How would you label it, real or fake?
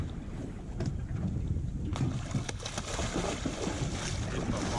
real